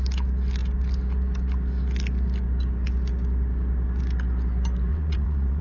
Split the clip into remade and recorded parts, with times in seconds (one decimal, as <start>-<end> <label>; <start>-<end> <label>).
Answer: 0.0-4.9 recorded; 4.9-5.6 remade